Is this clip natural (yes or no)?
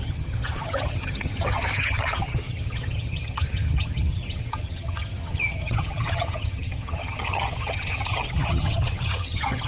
no